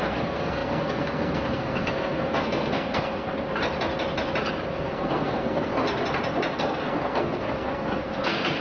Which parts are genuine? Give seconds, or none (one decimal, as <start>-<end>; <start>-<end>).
3.3-4.7; 5.7-6.5